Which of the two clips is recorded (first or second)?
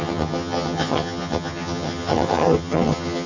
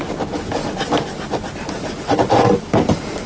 second